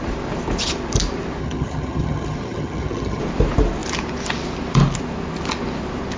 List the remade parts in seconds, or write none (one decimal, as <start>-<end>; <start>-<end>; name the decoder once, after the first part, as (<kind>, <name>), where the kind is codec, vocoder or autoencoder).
1.4-3.2 (vocoder, HiFi-GAN)